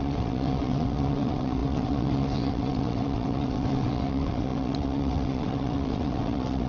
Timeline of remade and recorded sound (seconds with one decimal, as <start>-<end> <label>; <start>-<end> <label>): 0.0-6.7 remade